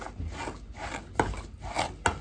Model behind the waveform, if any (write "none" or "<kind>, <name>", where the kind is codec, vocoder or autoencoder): none